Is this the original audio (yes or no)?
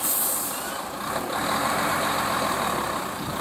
no